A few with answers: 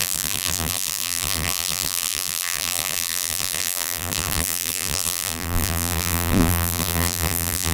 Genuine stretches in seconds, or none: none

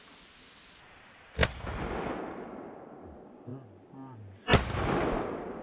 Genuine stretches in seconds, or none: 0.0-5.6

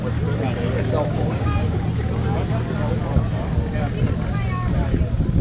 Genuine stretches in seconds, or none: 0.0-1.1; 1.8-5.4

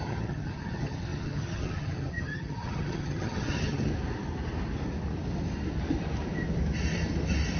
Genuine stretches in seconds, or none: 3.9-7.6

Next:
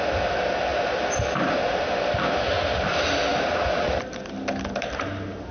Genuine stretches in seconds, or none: 0.0-0.7; 1.7-5.5

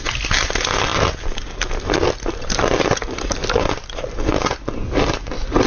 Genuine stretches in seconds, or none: 0.0-5.7

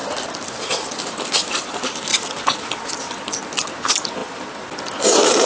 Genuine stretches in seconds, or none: 0.0-5.5

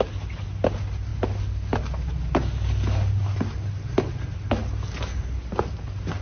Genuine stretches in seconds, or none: 0.0-6.2